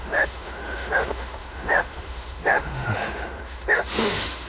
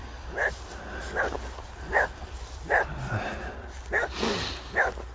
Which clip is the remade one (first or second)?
first